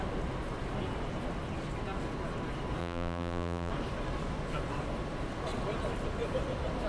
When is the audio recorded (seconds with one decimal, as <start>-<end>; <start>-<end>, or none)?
0.0-2.8; 3.7-6.9